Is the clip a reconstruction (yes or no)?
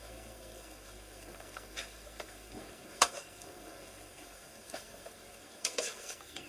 yes